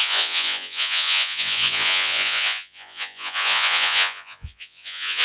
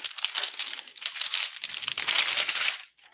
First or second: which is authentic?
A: second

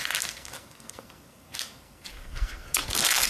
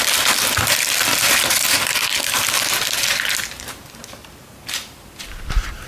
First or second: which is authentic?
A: second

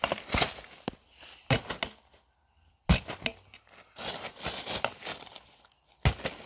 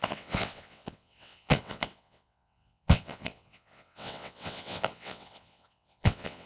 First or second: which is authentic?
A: first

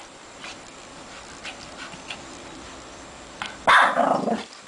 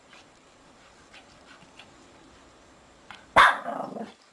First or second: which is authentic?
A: first